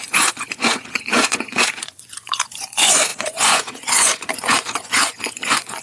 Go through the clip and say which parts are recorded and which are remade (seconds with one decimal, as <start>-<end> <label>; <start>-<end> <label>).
0.0-5.8 remade